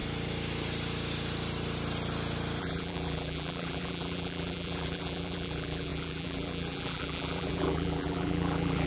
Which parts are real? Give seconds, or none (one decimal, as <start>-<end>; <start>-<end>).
0.0-2.6